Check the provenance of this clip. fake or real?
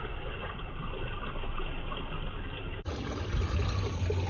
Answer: real